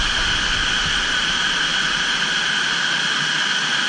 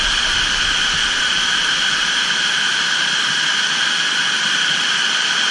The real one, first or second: first